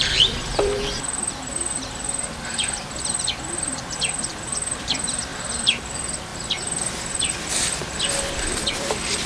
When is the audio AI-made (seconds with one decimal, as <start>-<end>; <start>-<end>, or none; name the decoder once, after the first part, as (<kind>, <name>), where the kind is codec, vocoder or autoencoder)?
0.0-6.3 (vocoder, BigVGAN v2); 7.6-9.3